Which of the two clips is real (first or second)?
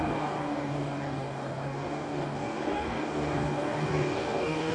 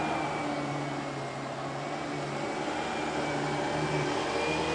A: second